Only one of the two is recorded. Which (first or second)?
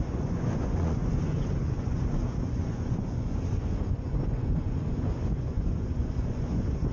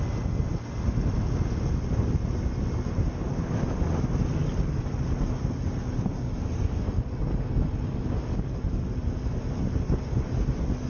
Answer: second